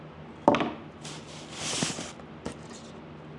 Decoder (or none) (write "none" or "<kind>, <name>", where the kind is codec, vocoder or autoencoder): none